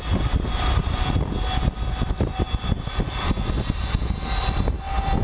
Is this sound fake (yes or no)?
no